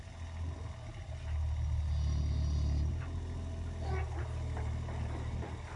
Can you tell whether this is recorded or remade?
recorded